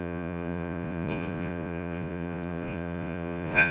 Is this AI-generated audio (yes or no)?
yes